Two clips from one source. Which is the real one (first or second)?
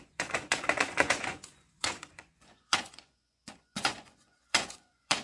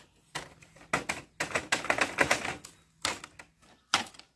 second